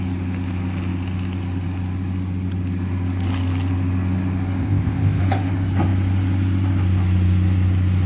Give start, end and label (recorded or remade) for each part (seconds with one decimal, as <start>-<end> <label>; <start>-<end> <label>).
0.0-4.6 recorded; 4.6-5.2 remade; 5.2-8.1 recorded